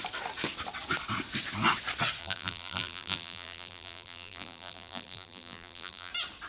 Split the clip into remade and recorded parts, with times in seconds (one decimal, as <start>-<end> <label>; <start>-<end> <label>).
0.0-2.2 recorded; 2.2-6.1 remade; 6.1-6.5 recorded